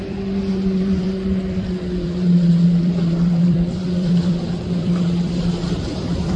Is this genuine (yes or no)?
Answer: no